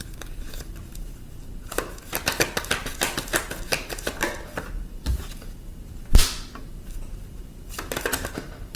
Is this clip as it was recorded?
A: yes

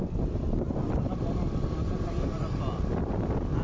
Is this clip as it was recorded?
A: yes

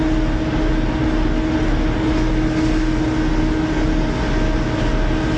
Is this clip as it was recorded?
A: yes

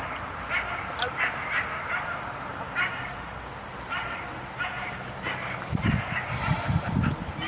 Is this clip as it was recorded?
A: yes